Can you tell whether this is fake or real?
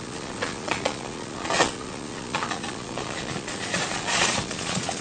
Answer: fake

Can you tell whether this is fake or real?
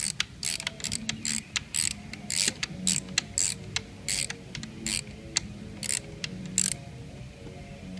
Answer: real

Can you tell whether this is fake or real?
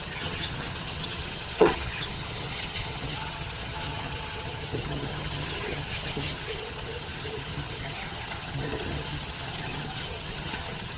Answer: fake